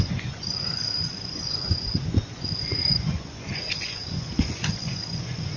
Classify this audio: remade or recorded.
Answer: remade